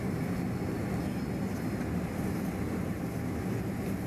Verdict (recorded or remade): recorded